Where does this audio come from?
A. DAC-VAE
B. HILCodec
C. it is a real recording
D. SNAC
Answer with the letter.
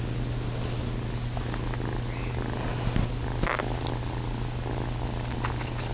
C